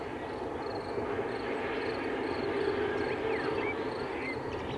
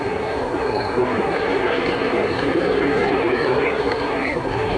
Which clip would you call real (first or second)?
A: first